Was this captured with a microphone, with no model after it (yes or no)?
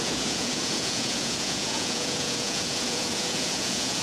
no